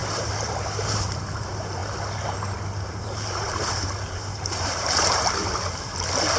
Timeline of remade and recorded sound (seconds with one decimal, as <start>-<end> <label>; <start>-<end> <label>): 0.0-1.8 remade; 1.8-2.9 recorded; 2.9-5.4 remade; 5.4-6.4 recorded